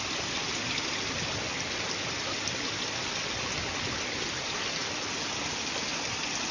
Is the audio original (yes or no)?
yes